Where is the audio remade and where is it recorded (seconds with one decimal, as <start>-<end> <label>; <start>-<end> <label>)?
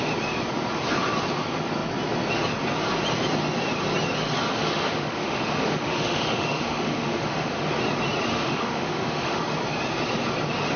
0.0-4.5 recorded; 4.5-7.7 remade; 7.7-8.3 recorded; 8.3-9.4 remade; 9.4-10.8 recorded